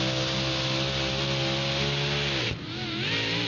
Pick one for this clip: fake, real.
real